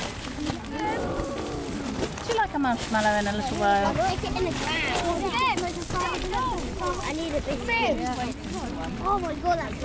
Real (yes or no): yes